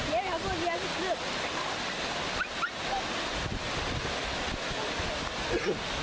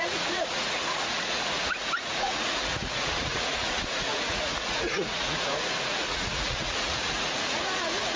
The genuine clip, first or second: first